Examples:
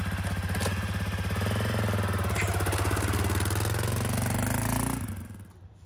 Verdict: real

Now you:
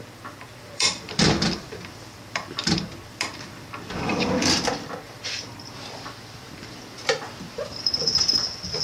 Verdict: fake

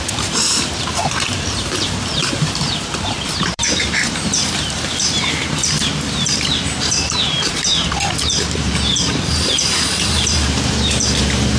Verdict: fake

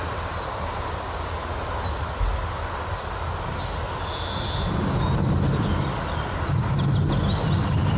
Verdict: real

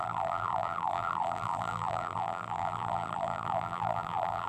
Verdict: fake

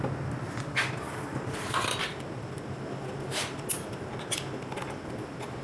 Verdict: real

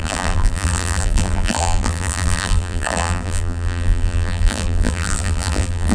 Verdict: fake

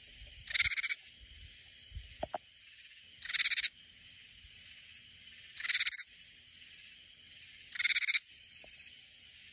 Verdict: real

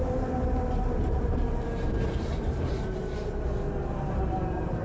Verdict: fake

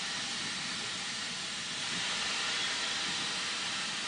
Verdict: real